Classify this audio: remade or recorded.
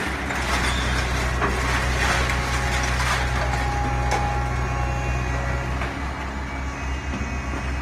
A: recorded